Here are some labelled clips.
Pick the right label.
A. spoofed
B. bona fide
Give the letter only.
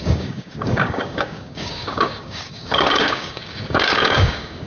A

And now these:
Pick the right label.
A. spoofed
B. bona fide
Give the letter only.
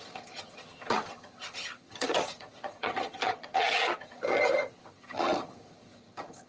A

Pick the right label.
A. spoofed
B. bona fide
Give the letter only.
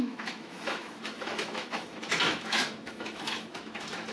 A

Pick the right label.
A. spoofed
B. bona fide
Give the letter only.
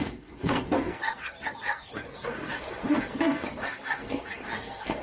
A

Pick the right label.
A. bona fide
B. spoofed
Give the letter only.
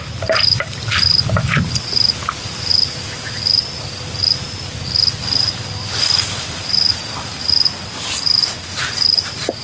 A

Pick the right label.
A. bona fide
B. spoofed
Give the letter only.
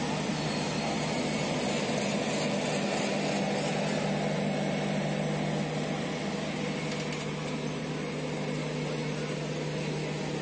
A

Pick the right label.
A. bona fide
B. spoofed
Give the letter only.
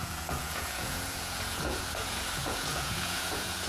B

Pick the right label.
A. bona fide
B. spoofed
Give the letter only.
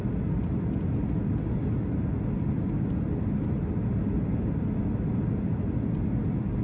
A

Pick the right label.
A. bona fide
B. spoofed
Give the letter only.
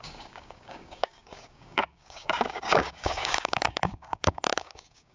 B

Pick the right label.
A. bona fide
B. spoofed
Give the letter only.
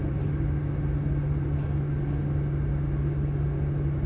A